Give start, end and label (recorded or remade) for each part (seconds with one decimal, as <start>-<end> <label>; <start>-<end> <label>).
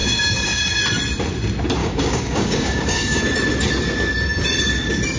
0.0-0.8 remade; 0.8-1.8 recorded; 1.8-3.2 remade; 3.2-5.2 recorded